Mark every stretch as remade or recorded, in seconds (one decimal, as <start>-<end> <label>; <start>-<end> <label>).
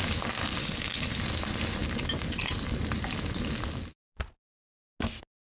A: 0.0-0.6 recorded; 0.6-1.2 remade; 1.2-5.4 recorded